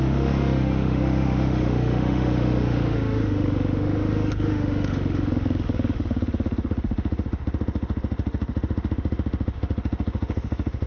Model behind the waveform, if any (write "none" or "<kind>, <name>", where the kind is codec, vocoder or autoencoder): autoencoder, DAC-VAE